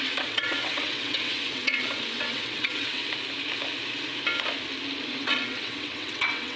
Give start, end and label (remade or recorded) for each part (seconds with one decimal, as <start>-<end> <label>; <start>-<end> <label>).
0.0-3.0 remade; 3.0-5.1 recorded; 5.1-6.6 remade